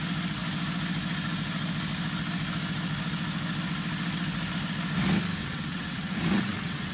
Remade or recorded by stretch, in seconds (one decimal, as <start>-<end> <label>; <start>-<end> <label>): 0.0-5.4 recorded; 5.4-6.9 remade